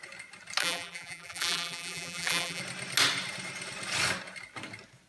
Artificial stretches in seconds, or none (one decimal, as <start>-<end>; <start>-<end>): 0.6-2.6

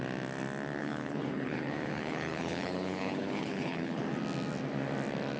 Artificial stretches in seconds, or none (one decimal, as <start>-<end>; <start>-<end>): 0.8-4.0

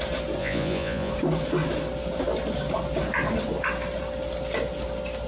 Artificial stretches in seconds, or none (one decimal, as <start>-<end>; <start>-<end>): 0.4-1.1

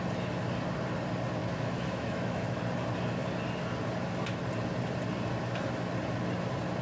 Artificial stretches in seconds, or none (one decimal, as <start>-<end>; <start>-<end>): 1.4-2.6

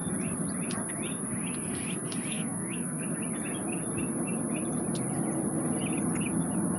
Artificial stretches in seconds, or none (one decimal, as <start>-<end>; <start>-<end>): 2.3-3.0

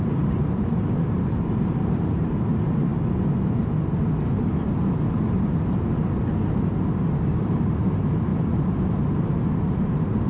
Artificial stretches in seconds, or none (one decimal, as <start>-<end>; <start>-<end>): 0.0-2.9; 7.3-10.3

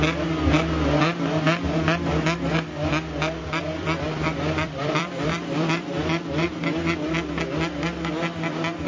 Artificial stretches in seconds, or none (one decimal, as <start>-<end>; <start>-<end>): 3.4-6.5